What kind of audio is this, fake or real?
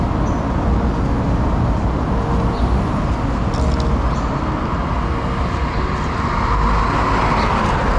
real